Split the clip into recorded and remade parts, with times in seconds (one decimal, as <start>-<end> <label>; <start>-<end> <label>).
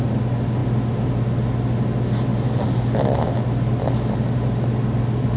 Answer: 0.0-5.4 recorded